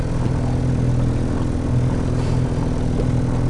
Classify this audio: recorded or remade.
recorded